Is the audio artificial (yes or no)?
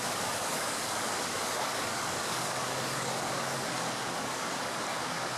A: yes